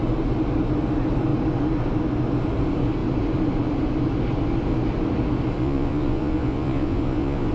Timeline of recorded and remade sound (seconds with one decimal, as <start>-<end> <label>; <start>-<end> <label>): 0.0-5.6 recorded; 5.6-7.5 remade